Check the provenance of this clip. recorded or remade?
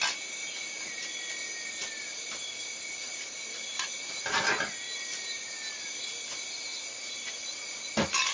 recorded